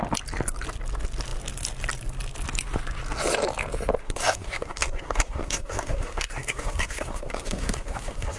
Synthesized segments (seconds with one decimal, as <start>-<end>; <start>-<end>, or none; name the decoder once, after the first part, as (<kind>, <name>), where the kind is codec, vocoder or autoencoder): 4.0-8.4 (codec, SNAC)